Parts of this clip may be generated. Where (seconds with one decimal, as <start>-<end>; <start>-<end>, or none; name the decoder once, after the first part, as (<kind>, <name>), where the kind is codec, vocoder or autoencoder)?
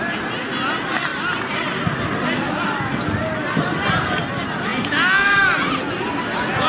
none